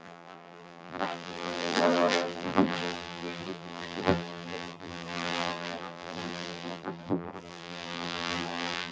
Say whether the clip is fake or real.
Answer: fake